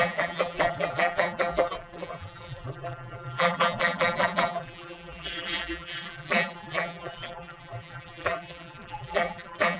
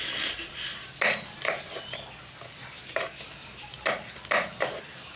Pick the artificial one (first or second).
first